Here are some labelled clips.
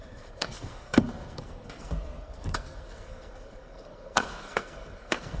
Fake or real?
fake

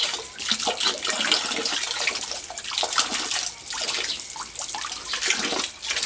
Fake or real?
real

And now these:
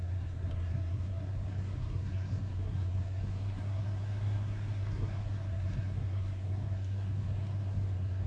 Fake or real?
fake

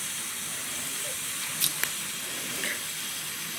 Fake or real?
real